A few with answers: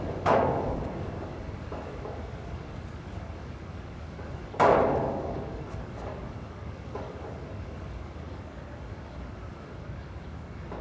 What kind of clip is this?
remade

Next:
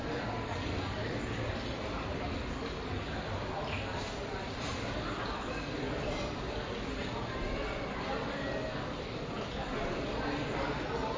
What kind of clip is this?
recorded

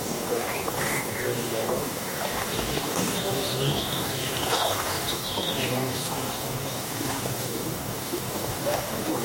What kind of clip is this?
remade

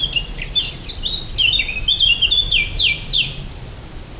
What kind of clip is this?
recorded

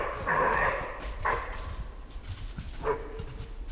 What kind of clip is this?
recorded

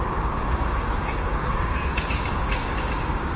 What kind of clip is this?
remade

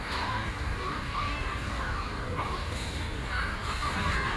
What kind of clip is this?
remade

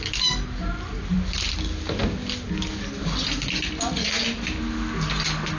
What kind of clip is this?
recorded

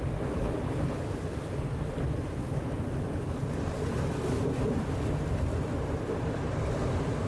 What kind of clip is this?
recorded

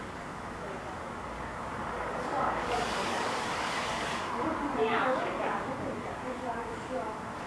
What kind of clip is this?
remade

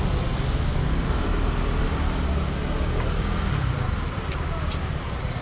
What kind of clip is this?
recorded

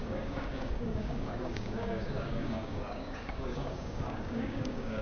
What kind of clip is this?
remade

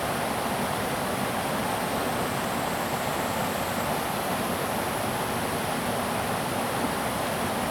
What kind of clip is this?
recorded